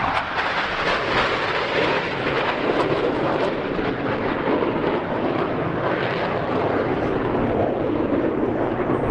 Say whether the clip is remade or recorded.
recorded